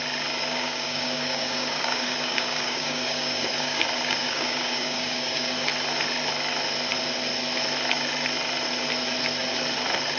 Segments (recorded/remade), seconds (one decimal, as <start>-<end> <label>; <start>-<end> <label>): 0.0-0.4 recorded; 0.4-5.5 remade; 5.5-10.2 recorded